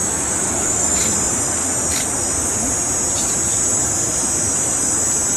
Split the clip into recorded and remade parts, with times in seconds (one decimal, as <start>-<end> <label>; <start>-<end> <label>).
0.0-1.1 remade; 1.1-5.4 recorded